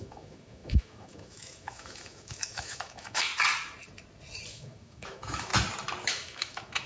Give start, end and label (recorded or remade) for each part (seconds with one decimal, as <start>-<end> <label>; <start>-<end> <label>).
0.0-3.3 remade; 3.3-4.5 recorded; 4.5-5.5 remade; 5.5-6.1 recorded; 6.1-6.9 remade